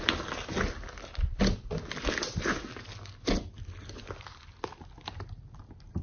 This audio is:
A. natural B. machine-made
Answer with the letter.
A